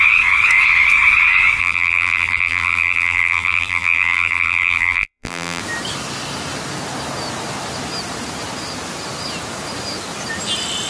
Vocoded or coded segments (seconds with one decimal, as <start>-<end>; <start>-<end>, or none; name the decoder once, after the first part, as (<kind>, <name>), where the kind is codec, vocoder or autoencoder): 1.6-5.6 (vocoder, BigVGAN v2)